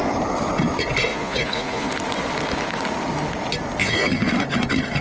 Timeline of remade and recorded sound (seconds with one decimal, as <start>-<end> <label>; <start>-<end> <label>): 0.0-1.1 recorded; 1.1-1.9 remade; 1.9-3.8 recorded; 3.8-4.3 remade; 4.3-5.0 recorded